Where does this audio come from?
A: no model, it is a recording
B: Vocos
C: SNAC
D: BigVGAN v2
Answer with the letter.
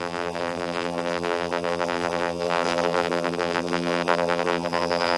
D